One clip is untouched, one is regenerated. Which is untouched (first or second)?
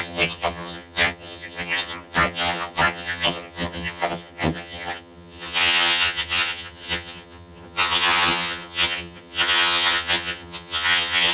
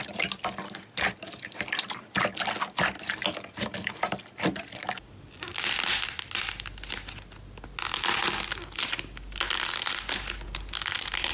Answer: second